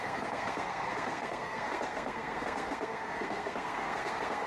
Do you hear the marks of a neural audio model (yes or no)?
yes